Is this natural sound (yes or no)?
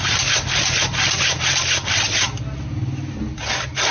yes